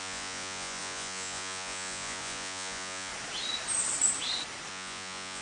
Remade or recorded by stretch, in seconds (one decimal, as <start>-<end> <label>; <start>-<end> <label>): 0.0-3.1 remade; 3.1-4.7 recorded; 4.7-5.4 remade